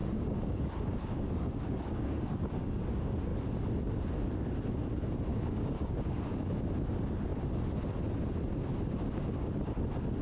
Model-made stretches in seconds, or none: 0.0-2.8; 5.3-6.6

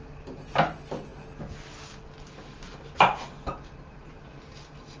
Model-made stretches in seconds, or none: none